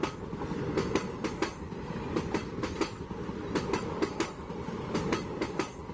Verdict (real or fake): real